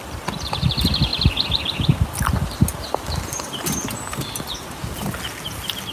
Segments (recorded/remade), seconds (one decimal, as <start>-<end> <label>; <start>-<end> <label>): 0.0-5.9 recorded